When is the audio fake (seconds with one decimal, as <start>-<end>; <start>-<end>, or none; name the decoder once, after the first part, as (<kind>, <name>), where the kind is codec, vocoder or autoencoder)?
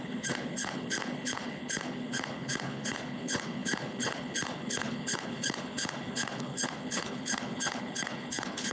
0.0-8.7 (codec, HILCodec)